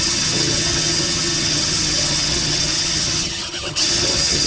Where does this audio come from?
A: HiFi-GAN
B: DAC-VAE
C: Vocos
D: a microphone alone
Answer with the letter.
A